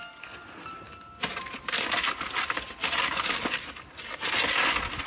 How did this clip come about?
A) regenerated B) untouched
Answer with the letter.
B